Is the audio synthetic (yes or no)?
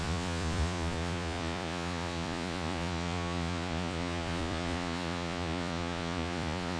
yes